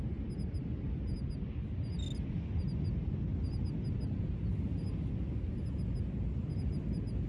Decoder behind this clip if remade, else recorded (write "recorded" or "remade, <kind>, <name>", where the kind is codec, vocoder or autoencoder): recorded